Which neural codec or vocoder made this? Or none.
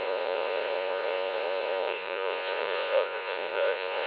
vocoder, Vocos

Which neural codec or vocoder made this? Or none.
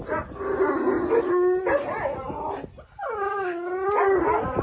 none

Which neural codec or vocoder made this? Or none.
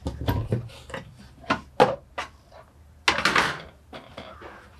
none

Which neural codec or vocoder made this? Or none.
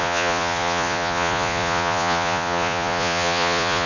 vocoder, Vocos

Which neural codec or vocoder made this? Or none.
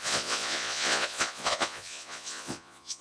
vocoder, Vocos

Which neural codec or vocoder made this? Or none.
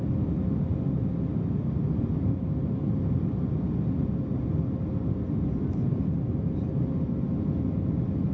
none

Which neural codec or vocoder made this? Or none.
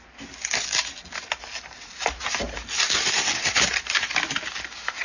none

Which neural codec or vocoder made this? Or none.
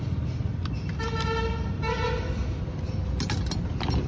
none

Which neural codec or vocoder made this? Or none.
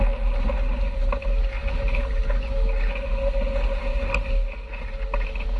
none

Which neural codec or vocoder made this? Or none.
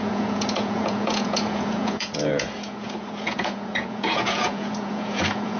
vocoder, Vocos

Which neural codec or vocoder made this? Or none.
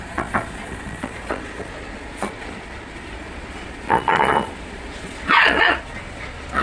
vocoder, Vocos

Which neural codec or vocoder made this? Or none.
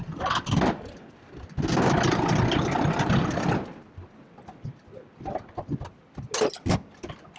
none